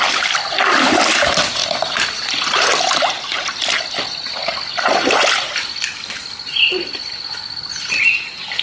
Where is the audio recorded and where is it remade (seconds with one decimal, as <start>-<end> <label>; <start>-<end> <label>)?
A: 0.0-8.6 recorded